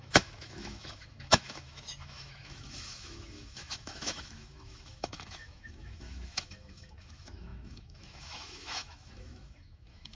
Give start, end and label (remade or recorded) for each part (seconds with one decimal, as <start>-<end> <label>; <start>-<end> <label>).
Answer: 0.0-10.1 remade